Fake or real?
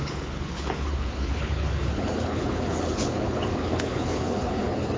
fake